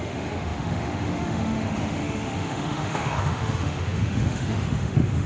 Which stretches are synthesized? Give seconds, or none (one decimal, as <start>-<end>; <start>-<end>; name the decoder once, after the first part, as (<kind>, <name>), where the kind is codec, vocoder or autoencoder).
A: 0.0-5.3 (autoencoder, DAC-VAE)